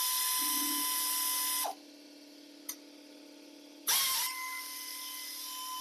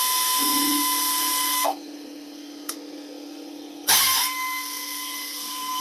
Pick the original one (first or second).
first